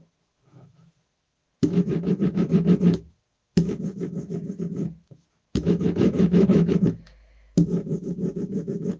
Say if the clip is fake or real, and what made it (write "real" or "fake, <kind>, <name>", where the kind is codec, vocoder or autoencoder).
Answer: fake, autoencoder, DAC-VAE